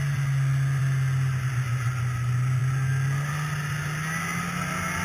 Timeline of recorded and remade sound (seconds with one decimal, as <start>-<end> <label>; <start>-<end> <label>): 0.0-5.0 recorded